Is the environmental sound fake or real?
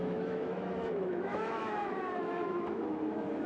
fake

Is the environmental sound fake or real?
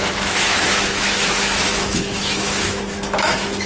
fake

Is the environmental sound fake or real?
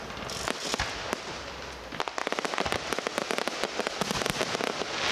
real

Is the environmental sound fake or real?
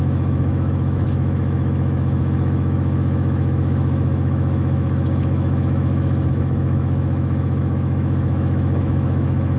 fake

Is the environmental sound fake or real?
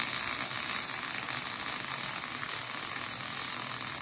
real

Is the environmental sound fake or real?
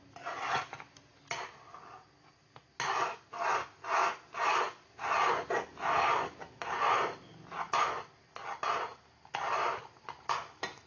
real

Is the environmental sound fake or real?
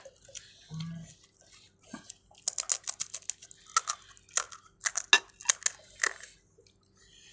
real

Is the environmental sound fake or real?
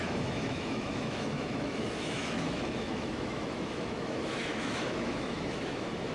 fake